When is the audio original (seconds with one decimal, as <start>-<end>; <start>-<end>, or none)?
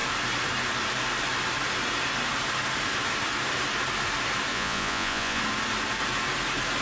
0.0-4.5; 5.4-6.8